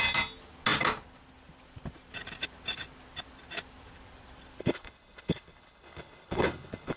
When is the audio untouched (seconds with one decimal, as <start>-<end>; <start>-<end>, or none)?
0.0-4.6